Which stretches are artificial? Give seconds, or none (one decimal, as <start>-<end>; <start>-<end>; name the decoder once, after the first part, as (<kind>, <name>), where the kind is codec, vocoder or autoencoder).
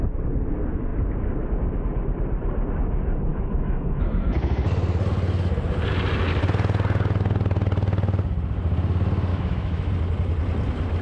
3.3-4.3 (autoencoder, DAC-VAE); 9.3-9.9